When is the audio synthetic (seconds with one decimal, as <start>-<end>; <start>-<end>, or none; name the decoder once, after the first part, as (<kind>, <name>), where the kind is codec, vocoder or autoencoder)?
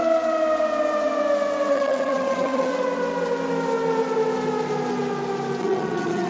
1.7-2.7 (vocoder, HiFi-GAN); 5.6-6.3